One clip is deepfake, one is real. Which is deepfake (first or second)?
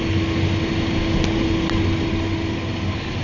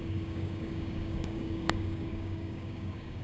second